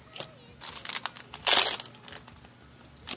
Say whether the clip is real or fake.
real